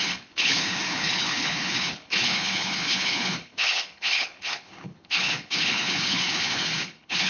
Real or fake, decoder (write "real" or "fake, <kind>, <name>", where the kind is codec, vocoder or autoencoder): fake, codec, HILCodec